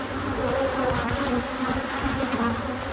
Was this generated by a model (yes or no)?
no